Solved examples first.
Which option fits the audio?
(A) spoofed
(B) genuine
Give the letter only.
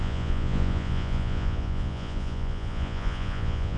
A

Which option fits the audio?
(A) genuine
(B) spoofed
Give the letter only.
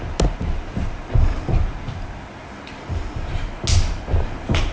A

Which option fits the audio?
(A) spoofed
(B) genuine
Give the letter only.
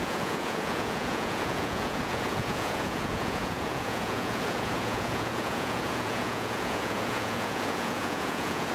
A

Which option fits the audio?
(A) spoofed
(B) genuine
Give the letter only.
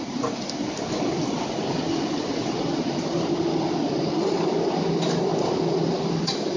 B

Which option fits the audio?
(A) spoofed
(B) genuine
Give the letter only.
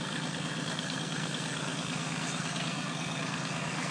A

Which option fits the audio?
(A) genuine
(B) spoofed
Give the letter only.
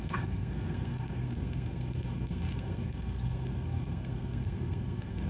B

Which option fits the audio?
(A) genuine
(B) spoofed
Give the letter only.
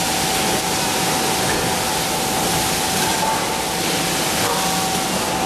A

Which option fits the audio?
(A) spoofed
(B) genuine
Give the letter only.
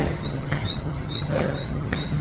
A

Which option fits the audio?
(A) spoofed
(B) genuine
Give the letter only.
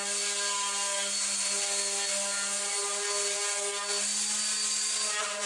B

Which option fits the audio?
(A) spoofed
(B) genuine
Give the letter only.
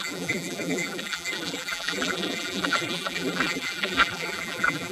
A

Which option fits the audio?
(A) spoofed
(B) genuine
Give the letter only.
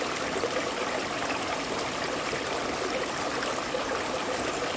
B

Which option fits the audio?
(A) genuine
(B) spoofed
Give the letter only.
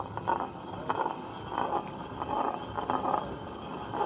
A